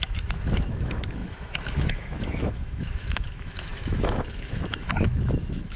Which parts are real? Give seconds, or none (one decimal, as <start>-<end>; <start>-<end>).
none